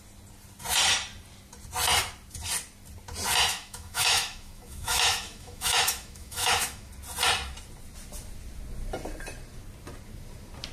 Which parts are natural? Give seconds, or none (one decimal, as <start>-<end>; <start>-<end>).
0.0-3.5; 6.9-10.7